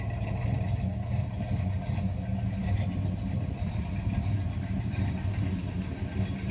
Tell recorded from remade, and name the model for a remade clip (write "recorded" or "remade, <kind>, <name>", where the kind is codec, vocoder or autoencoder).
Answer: remade, vocoder, BigVGAN v2